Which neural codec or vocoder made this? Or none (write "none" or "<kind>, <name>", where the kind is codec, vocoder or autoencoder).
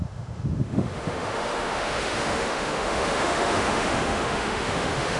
autoencoder, DAC-VAE